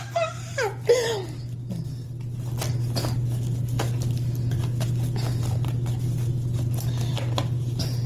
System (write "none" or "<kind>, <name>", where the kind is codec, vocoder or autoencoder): none